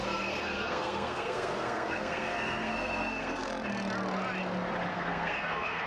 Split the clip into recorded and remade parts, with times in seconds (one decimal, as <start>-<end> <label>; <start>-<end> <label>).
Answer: 0.0-3.5 remade; 3.5-4.9 recorded; 4.9-5.9 remade